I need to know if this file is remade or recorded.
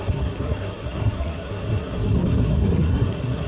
remade